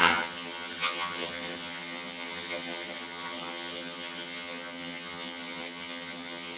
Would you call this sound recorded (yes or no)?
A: no